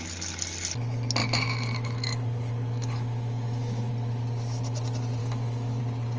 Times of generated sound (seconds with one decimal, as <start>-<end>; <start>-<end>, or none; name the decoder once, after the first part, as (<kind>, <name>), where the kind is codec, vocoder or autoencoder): 1.2-3.9 (autoencoder, DAC-VAE); 5.2-5.8